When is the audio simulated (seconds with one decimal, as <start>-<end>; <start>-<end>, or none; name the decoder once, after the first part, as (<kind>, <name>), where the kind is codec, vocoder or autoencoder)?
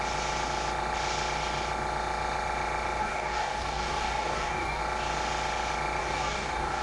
3.0-4.8 (codec, DAC); 6.0-6.8